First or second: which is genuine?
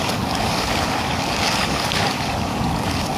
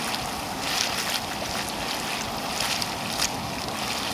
second